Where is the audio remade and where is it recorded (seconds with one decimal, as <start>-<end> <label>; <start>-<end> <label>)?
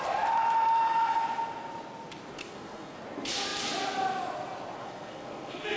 0.0-2.4 recorded; 2.4-3.0 remade; 3.0-4.8 recorded; 4.8-5.8 remade